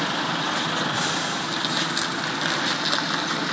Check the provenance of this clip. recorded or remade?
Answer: recorded